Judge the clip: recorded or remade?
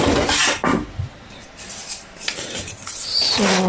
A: recorded